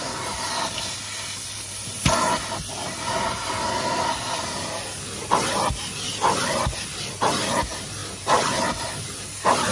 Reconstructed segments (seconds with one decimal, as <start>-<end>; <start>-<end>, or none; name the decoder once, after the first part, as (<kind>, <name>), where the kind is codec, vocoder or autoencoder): none